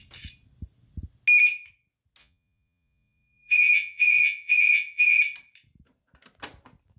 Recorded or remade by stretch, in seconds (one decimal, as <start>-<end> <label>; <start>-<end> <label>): 0.0-2.2 recorded; 2.2-5.2 remade; 5.2-7.0 recorded